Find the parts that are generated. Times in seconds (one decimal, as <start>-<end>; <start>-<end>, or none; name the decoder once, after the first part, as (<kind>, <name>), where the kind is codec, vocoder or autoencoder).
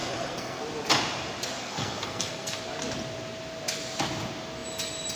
0.0-0.6 (codec, SNAC); 1.6-2.6